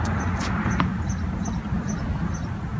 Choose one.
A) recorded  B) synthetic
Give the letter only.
A